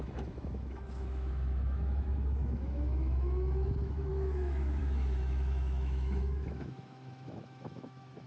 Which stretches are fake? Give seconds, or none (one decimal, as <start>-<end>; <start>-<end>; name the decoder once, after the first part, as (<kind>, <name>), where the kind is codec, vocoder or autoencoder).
0.0-8.3 (autoencoder, DAC-VAE)